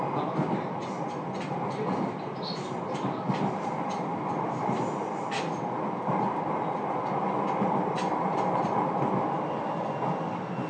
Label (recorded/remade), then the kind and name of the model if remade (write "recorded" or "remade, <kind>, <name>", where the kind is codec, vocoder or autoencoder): recorded